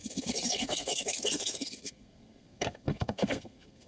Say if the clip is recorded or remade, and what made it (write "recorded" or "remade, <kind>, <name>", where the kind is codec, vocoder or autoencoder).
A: remade, codec, SNAC